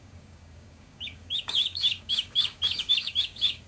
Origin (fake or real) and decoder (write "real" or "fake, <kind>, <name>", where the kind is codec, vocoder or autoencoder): fake, codec, DAC